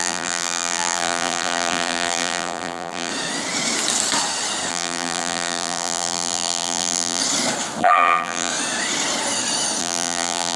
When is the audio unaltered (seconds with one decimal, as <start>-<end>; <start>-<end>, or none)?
3.1-4.7; 7.2-7.8; 8.5-9.8